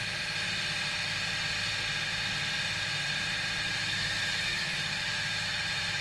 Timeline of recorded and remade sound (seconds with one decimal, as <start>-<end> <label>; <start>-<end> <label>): 0.0-3.6 recorded; 3.6-6.0 remade

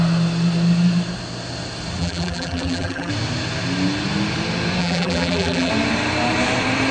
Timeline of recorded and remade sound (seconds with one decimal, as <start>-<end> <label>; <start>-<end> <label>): 0.0-2.0 recorded; 2.0-3.1 remade; 3.1-4.8 recorded; 4.8-5.7 remade; 5.7-6.9 recorded

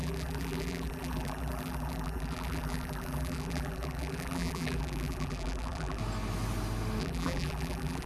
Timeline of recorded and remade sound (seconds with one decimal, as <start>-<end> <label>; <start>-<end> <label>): 0.0-6.0 remade; 6.0-7.0 recorded; 7.0-8.1 remade

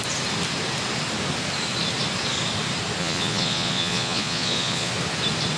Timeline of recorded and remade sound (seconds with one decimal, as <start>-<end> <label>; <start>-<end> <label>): 0.0-3.0 recorded; 3.0-4.9 remade; 4.9-5.6 recorded

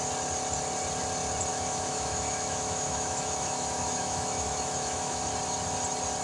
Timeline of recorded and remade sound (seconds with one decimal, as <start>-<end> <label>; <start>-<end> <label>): 0.0-1.5 recorded; 1.5-5.2 remade; 5.2-6.2 recorded